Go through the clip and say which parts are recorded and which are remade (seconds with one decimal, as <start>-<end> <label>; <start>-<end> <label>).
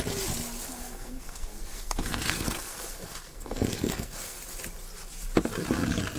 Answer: 0.0-0.7 recorded; 0.7-4.4 remade; 4.4-6.2 recorded